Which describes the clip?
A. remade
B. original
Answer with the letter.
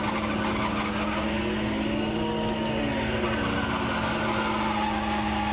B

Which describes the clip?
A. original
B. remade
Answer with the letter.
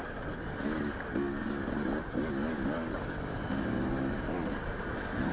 A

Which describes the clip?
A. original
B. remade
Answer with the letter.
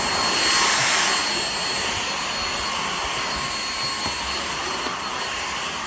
A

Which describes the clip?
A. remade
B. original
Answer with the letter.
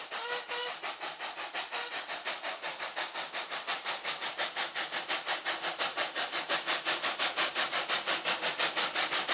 B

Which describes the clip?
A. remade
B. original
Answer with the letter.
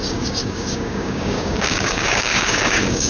A